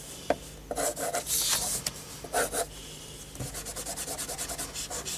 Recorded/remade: recorded